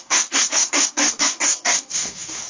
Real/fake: fake